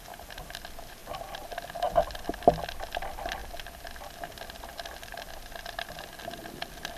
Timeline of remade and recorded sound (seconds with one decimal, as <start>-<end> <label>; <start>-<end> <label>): 0.0-7.0 recorded